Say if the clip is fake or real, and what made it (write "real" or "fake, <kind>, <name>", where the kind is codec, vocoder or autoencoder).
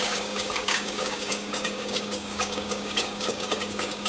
fake, codec, DAC